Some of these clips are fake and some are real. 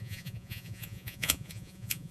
fake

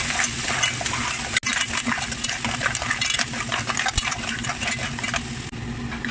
real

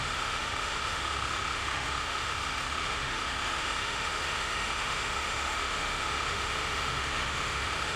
fake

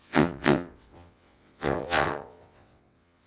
fake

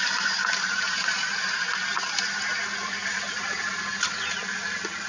real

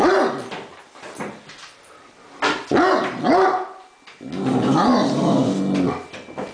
real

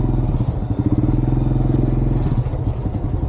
real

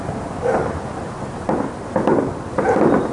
real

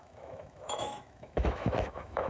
fake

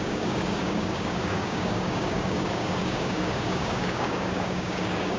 fake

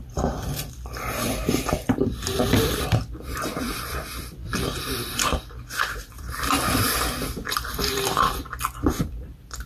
fake